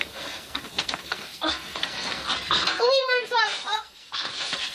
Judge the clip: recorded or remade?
remade